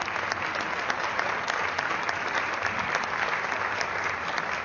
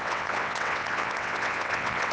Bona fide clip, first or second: first